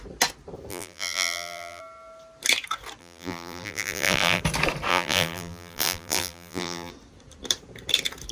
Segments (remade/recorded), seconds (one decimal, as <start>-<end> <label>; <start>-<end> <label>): 0.0-0.7 recorded; 0.7-1.8 remade; 1.8-3.0 recorded; 3.0-4.4 remade; 4.4-4.9 recorded; 4.9-6.9 remade; 6.9-8.3 recorded